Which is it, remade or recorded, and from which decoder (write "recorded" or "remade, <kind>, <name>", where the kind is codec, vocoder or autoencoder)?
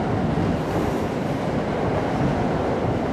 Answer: recorded